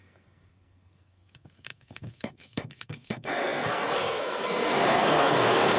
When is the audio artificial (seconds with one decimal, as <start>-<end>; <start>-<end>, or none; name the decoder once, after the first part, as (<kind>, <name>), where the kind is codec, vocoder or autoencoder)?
0.0-5.8 (codec, SNAC)